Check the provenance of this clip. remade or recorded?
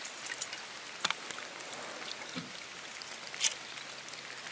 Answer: recorded